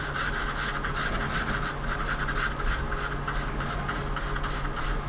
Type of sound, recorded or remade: recorded